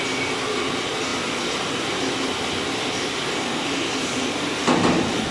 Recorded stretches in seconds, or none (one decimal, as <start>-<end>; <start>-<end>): none